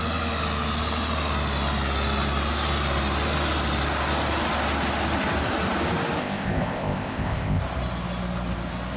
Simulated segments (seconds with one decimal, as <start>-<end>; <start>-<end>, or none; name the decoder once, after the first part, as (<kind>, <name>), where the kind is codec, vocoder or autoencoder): 6.2-7.6 (codec, ZipCodec)